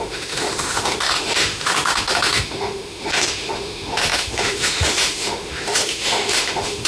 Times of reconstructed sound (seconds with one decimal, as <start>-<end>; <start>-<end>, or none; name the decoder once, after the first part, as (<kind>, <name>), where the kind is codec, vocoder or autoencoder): 0.0-6.9 (autoencoder, DAC-VAE)